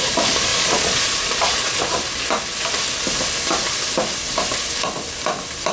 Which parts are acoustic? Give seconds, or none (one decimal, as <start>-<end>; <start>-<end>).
0.0-0.5; 1.8-5.7